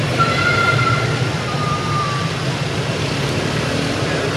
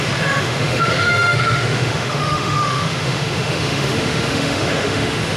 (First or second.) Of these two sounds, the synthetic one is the second